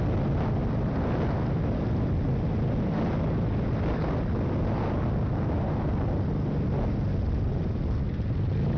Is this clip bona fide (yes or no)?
yes